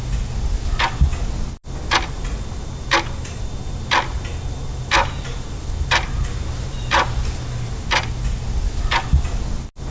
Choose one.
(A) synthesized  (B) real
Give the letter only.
B